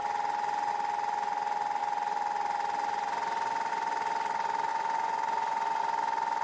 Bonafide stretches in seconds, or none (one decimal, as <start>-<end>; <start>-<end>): 0.0-4.7; 5.8-6.4